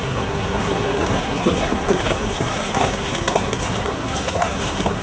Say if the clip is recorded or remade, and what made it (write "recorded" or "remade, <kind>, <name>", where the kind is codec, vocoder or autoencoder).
remade, codec, SNAC